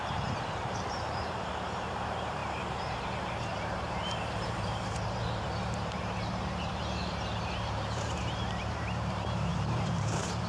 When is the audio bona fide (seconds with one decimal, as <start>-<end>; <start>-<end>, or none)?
none